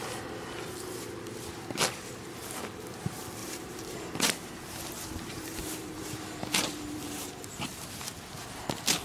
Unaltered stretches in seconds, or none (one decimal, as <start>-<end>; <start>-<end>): 0.0-3.4; 7.4-9.0